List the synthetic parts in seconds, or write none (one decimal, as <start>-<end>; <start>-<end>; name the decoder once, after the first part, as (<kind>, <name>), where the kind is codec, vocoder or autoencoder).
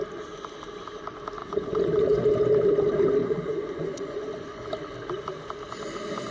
1.4-2.2 (vocoder, Vocos); 3.2-4.6